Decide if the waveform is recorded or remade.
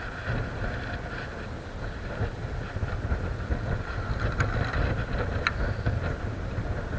recorded